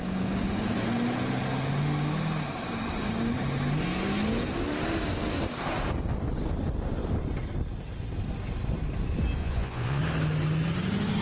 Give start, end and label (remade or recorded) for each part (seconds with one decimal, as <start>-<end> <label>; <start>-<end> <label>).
0.0-9.4 recorded; 9.4-10.0 remade; 10.0-11.2 recorded